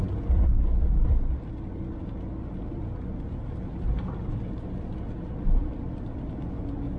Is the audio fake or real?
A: fake